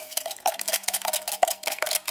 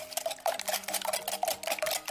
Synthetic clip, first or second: first